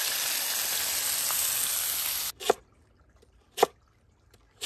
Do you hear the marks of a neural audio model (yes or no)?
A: no